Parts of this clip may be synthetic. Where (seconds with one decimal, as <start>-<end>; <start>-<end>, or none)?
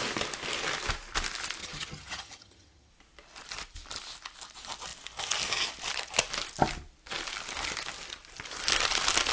1.6-2.9